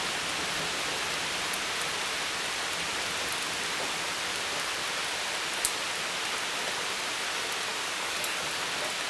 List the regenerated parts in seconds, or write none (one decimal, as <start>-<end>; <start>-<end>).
7.7-8.5